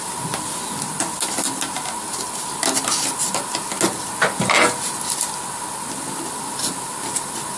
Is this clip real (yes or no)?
yes